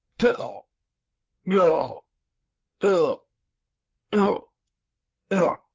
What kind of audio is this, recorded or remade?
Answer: remade